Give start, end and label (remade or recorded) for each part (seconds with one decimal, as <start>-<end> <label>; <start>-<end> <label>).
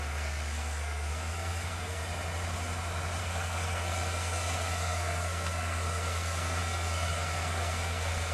0.0-2.0 remade; 2.0-3.2 recorded; 3.2-8.3 remade